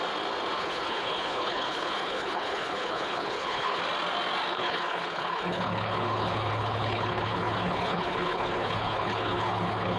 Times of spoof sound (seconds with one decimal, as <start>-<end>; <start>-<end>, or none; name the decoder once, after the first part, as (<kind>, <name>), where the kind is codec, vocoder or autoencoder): 0.6-3.8 (codec, HILCodec); 4.5-10.0